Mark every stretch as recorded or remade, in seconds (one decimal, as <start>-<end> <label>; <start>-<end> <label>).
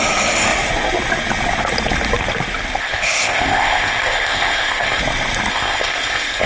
0.0-2.8 recorded; 2.8-5.0 remade; 5.0-5.5 recorded; 5.5-6.5 remade